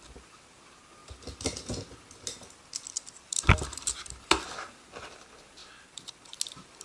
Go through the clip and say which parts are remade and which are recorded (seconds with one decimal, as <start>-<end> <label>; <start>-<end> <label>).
0.0-5.6 recorded; 5.6-6.3 remade; 6.3-6.8 recorded